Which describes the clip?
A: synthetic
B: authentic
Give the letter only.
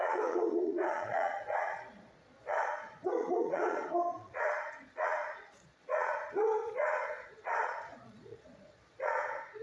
A